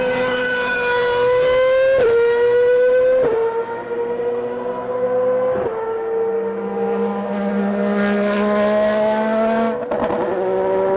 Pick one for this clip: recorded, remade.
recorded